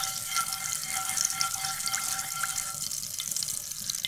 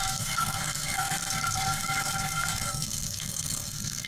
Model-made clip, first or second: second